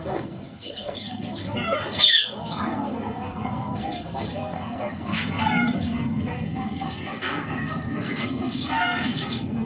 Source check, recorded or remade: remade